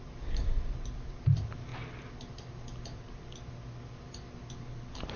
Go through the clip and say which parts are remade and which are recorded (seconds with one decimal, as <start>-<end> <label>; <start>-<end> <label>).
0.0-1.7 remade; 1.7-4.8 recorded; 4.8-5.2 remade